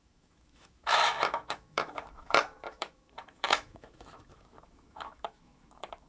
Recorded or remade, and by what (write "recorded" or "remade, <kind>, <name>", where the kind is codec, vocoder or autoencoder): remade, autoencoder, DAC-VAE